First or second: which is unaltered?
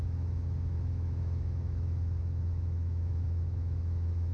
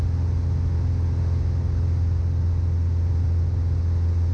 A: second